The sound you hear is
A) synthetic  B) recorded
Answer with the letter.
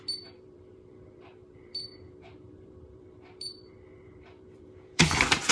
A